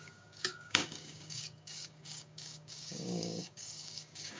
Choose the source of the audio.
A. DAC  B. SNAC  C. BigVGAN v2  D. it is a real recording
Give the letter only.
A